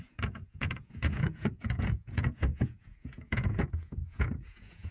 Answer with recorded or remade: remade